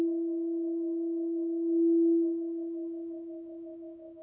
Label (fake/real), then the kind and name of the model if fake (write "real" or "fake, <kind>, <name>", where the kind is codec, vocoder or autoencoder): fake, autoencoder, DAC-VAE